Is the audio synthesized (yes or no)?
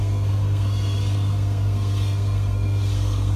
yes